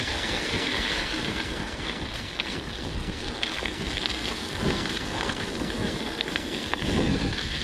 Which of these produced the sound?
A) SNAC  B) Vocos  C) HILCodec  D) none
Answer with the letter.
A